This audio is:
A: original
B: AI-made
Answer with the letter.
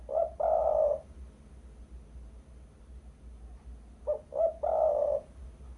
A